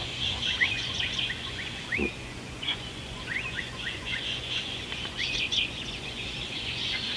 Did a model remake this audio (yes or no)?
yes